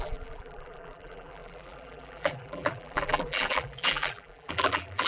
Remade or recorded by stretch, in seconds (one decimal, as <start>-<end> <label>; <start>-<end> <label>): 0.0-5.1 remade